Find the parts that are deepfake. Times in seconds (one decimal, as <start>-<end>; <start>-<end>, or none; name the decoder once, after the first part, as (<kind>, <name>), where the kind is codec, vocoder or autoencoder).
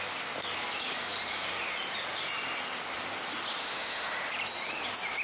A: 3.6-4.3 (autoencoder, DAC-VAE)